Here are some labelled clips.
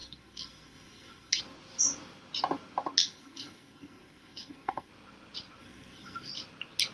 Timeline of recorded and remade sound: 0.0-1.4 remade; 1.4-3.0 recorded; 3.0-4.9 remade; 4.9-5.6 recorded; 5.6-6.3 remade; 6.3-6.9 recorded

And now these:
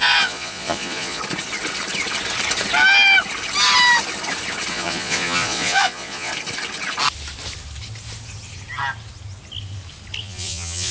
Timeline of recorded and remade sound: 0.0-1.2 remade; 1.2-4.7 recorded; 4.7-6.3 remade; 6.3-10.2 recorded; 10.2-10.9 remade

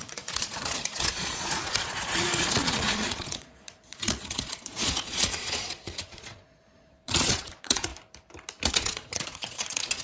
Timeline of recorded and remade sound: 0.0-7.9 remade; 7.9-8.7 recorded; 8.7-10.0 remade